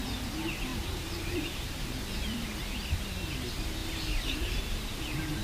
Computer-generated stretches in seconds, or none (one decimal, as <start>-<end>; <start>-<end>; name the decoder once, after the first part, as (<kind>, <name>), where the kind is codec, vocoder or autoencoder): 0.7-2.6 (vocoder, BigVGAN v2); 3.8-4.6

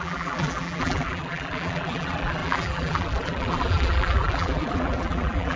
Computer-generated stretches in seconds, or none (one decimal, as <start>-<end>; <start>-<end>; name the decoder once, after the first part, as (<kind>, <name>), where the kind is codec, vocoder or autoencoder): 0.0-5.6 (vocoder, BigVGAN v2)

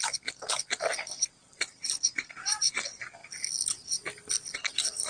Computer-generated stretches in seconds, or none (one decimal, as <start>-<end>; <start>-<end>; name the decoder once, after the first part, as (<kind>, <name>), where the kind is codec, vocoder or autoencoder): 1.4-2.8 (vocoder, BigVGAN v2)

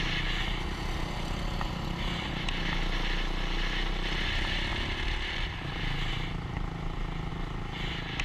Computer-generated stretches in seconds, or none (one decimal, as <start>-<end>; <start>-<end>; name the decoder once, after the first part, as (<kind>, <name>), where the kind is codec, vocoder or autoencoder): none

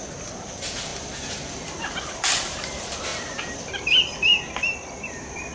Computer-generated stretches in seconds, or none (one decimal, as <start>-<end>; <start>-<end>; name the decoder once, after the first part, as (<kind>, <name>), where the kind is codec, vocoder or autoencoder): 0.0-4.3 (vocoder, BigVGAN v2); 5.1-5.5

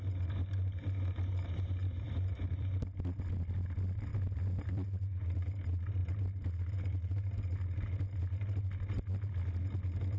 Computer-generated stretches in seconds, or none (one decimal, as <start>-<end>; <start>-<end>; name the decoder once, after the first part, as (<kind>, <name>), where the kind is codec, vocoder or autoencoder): 1.8-3.3 (vocoder, BigVGAN v2); 4.1-4.7